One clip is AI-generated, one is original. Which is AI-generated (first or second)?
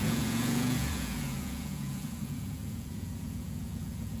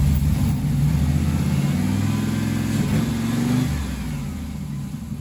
first